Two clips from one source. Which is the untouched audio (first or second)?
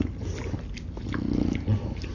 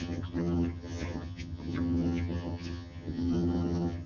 first